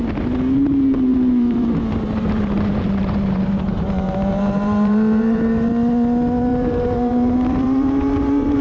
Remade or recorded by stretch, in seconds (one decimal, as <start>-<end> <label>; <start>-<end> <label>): 0.0-1.1 recorded; 1.1-5.7 remade; 5.7-6.5 recorded; 6.5-8.6 remade